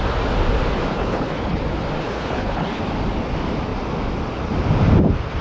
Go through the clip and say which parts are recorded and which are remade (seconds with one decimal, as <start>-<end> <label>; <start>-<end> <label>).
0.0-0.9 recorded; 0.9-1.6 remade; 1.6-2.0 recorded; 2.0-2.8 remade; 2.8-5.4 recorded